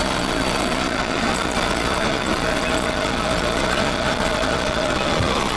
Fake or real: fake